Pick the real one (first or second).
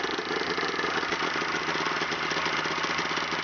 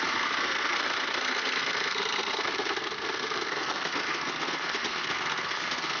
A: first